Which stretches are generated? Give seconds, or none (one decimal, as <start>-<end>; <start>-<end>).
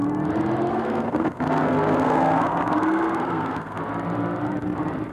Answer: 0.7-3.8